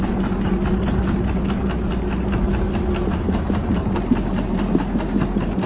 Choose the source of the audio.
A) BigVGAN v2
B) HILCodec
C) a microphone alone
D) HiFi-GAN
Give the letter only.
C